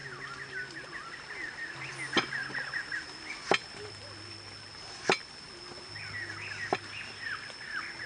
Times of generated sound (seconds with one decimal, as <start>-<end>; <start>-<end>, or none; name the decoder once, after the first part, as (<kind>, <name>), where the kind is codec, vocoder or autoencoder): none